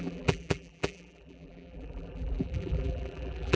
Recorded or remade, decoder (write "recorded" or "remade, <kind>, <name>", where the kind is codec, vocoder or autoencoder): remade, vocoder, BigVGAN v2